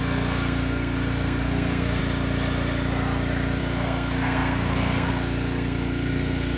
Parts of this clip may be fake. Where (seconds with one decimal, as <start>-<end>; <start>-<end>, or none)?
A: 0.0-2.0; 3.6-6.6